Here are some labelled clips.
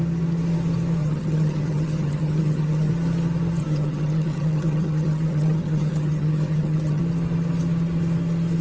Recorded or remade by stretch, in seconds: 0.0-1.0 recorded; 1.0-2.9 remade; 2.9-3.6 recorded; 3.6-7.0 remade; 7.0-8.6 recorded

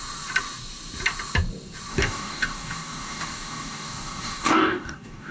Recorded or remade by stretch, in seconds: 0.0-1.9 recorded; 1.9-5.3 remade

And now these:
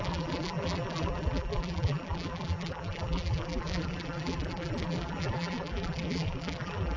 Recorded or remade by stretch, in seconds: 0.0-7.0 remade